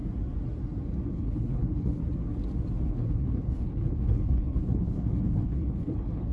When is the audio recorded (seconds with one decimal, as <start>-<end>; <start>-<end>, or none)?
0.0-1.1; 2.0-2.9